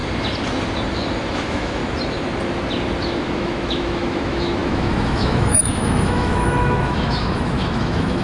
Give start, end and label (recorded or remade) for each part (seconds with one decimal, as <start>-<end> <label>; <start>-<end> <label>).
0.0-1.3 recorded; 1.3-1.8 remade; 1.8-3.1 recorded; 3.1-8.2 remade